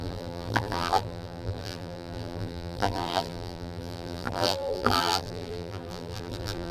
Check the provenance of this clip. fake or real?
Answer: fake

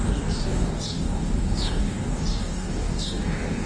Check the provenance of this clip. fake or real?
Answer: fake